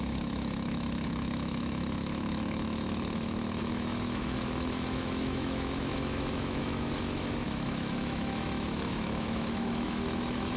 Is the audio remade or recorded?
remade